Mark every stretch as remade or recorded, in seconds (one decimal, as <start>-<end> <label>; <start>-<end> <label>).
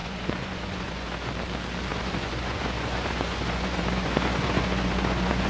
0.0-1.3 remade; 1.3-1.9 recorded; 1.9-5.5 remade